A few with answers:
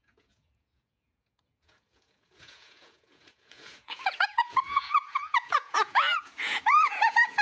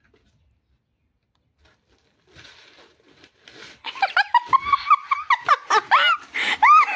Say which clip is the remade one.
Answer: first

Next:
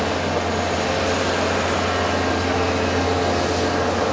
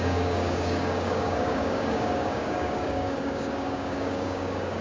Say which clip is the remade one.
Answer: second